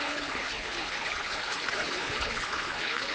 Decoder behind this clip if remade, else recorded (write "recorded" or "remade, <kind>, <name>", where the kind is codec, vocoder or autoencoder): remade, codec, HILCodec